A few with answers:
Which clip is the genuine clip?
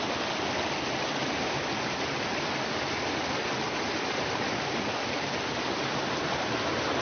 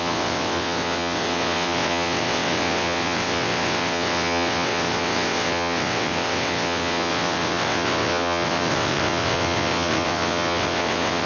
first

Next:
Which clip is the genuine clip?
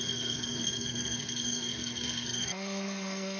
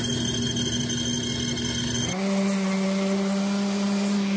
second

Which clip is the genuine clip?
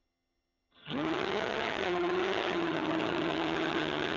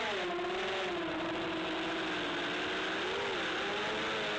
second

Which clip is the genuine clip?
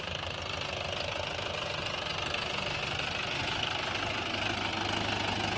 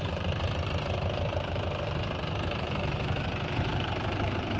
first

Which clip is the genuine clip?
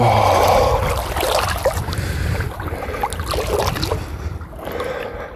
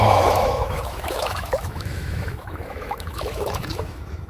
first